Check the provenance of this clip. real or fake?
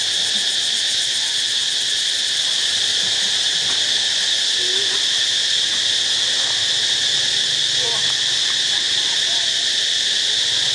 real